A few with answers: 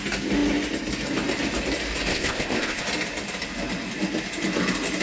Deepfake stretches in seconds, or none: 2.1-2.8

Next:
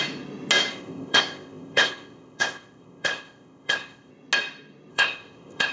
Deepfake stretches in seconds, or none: 0.7-4.1; 4.9-5.7

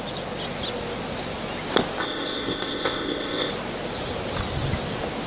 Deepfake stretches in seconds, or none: 2.0-3.5

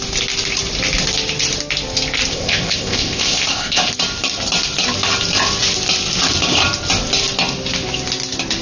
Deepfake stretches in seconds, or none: 2.3-3.8

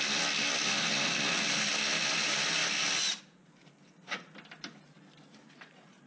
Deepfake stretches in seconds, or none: none

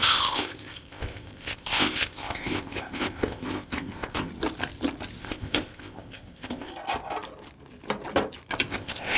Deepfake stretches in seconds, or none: 0.0-4.3; 5.2-6.7; 8.7-9.2

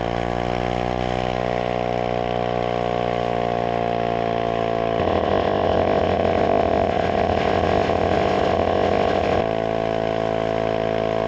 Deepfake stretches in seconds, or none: 5.0-9.4

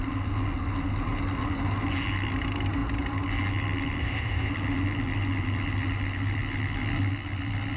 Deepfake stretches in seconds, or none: 4.0-4.5